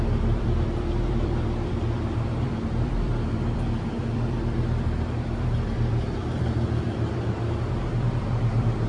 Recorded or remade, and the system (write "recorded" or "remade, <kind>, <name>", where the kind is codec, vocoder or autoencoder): remade, vocoder, BigVGAN v2